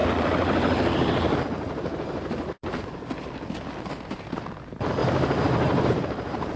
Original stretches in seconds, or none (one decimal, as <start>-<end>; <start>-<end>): 2.7-5.0